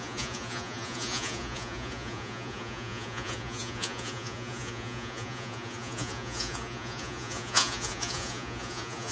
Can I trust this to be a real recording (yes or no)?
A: no